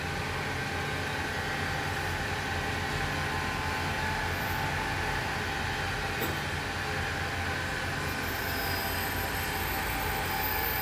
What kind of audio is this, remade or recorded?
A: recorded